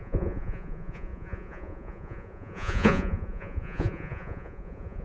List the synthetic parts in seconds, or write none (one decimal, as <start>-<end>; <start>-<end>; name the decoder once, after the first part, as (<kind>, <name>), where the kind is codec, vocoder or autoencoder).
0.0-5.0 (vocoder, Vocos)